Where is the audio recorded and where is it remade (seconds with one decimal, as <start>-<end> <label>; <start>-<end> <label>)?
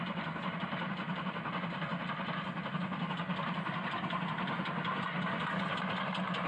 0.0-6.5 recorded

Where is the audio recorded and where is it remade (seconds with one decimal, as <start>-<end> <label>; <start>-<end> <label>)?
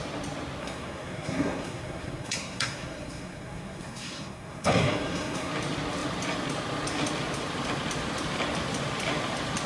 0.0-0.6 recorded; 0.6-5.5 remade; 5.5-9.7 recorded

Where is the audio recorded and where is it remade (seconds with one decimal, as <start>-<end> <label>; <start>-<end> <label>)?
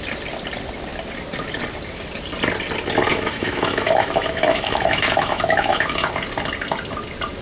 0.0-3.1 recorded; 3.1-6.1 remade; 6.1-7.4 recorded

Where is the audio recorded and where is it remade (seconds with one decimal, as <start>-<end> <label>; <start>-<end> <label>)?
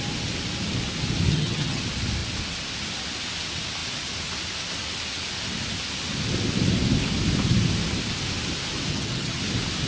0.0-1.3 recorded; 1.3-1.8 remade; 1.8-8.9 recorded; 8.9-9.4 remade; 9.4-9.9 recorded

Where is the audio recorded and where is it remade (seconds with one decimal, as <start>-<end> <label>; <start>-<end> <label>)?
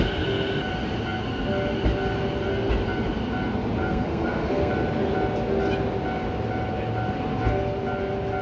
0.0-3.8 recorded; 3.8-4.7 remade; 4.7-8.4 recorded